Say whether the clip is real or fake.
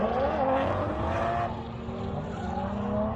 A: real